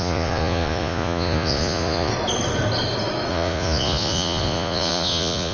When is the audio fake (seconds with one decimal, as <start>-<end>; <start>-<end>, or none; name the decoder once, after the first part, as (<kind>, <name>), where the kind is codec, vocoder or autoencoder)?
0.0-2.1 (vocoder, Vocos); 3.3-5.5